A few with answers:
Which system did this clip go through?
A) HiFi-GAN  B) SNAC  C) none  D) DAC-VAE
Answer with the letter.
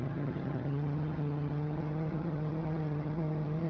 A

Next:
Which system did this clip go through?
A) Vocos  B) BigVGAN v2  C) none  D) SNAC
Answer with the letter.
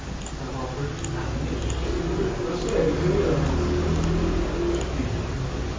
C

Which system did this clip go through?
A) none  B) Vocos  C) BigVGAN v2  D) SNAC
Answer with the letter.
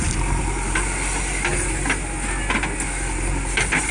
A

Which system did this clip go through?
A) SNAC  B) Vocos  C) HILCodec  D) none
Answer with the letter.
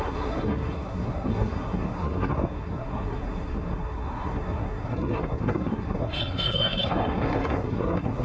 A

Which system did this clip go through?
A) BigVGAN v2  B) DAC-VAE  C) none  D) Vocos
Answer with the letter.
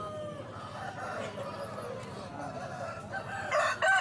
C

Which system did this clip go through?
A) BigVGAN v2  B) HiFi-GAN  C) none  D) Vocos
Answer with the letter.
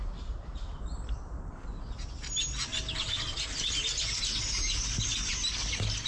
C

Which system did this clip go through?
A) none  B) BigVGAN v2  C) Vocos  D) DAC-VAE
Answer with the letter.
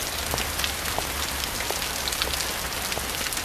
A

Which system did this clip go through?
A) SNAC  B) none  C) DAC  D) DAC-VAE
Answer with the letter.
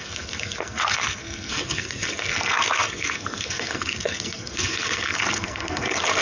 A